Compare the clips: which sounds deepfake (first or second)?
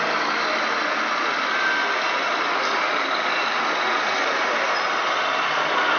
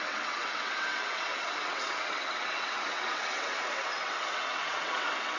second